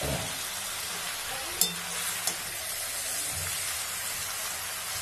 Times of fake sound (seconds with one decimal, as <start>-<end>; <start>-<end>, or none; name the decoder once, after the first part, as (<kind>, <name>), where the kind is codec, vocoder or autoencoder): none